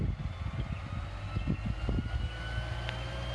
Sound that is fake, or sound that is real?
real